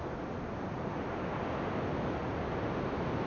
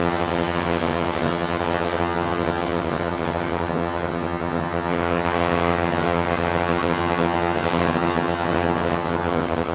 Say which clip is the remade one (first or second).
second